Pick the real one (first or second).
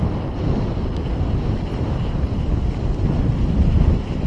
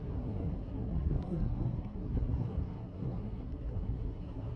first